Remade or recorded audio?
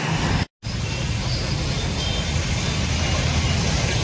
recorded